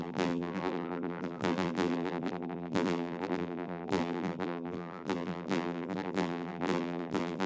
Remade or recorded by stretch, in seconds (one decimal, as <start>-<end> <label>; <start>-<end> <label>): 0.0-7.5 remade